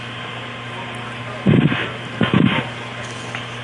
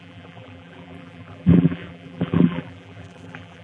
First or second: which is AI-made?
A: second